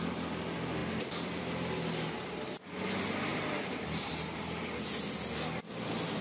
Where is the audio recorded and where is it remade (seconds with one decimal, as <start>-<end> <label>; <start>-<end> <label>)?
0.0-0.8 recorded; 0.8-1.4 remade; 1.4-3.3 recorded; 3.3-4.1 remade; 4.1-6.2 recorded